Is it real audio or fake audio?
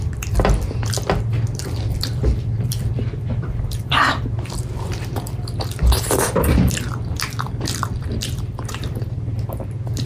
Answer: fake